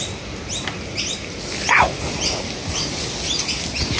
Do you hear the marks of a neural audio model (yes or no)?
no